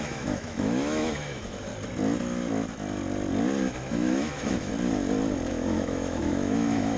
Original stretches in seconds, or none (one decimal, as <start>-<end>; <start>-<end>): 1.7-3.9; 4.7-5.5